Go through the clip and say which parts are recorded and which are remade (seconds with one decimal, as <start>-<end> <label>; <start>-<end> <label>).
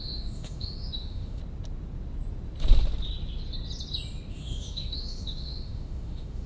0.0-1.4 remade; 1.4-4.3 recorded; 4.3-6.5 remade